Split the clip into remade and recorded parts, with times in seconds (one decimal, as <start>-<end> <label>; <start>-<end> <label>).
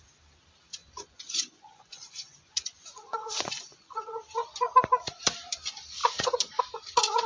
0.0-0.8 recorded; 0.8-4.1 remade; 4.1-7.3 recorded